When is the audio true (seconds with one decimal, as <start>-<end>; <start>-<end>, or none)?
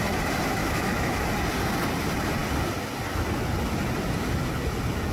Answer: 0.0-0.6; 1.2-5.1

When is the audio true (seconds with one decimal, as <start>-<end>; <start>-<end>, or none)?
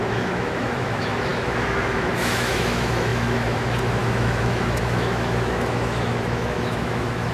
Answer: none